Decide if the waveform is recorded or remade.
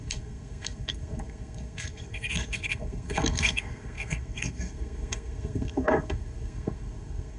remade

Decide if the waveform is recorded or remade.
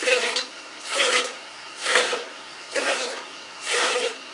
remade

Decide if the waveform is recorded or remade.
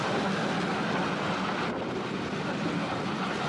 recorded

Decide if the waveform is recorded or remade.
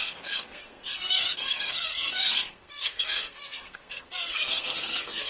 remade